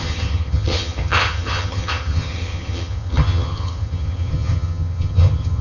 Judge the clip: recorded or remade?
remade